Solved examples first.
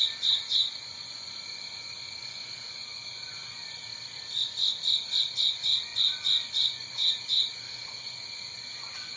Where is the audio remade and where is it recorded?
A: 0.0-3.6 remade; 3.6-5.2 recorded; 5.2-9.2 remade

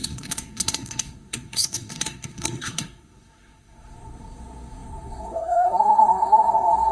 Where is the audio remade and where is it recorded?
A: 0.0-6.9 remade

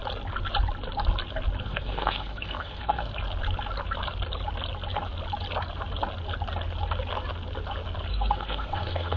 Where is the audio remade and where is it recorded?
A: 0.0-1.6 recorded; 1.6-3.1 remade; 3.1-8.1 recorded; 8.1-9.2 remade

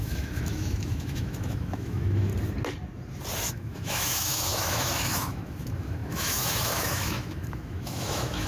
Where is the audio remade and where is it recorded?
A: 0.0-2.3 remade; 2.3-3.5 recorded; 3.5-8.5 remade

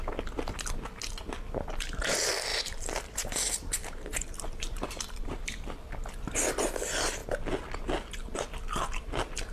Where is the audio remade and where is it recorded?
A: 0.0-2.5 recorded; 2.5-5.4 remade; 5.4-9.5 recorded